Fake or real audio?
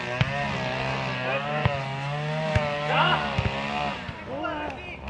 real